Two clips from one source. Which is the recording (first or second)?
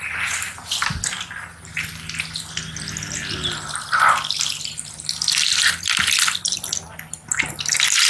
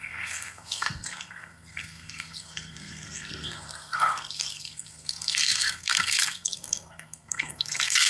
first